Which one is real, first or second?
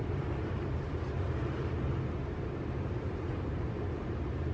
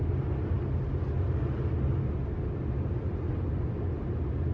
second